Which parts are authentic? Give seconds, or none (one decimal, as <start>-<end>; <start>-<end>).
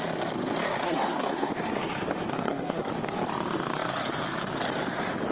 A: 0.0-0.8; 1.5-2.3; 2.9-5.3